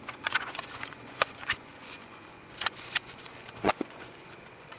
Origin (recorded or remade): remade